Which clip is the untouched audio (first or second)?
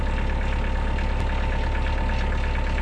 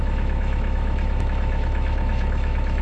first